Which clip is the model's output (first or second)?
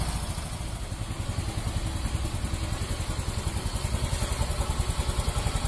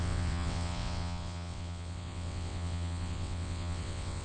second